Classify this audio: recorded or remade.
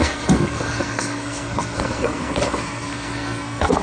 remade